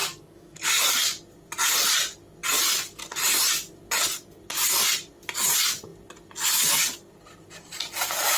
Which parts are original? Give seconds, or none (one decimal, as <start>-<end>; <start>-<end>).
0.7-8.4